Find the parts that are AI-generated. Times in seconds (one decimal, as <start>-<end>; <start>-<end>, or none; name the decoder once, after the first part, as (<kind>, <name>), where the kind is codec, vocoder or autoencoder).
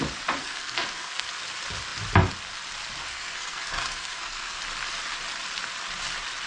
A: 0.4-1.4 (codec, SNAC); 3.1-4.6